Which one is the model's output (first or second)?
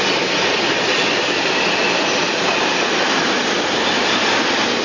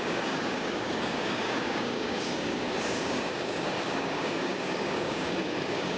second